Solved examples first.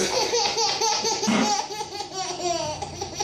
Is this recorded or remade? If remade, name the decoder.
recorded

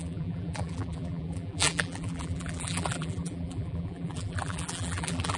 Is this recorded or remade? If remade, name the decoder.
remade, vocoder, BigVGAN v2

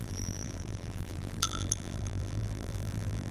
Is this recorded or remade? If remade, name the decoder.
remade, vocoder, BigVGAN v2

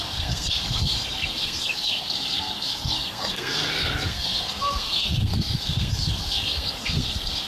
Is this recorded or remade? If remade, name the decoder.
remade, codec, SNAC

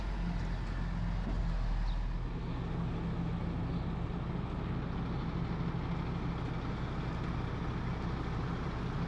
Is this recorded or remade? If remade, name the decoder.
recorded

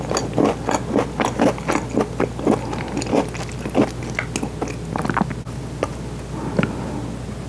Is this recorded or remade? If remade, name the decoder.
recorded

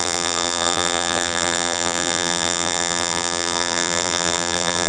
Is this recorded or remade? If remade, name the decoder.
remade, vocoder, BigVGAN v2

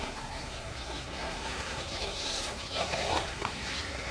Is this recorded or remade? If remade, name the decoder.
remade, codec, SNAC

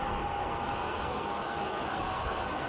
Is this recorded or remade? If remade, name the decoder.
remade, codec, SNAC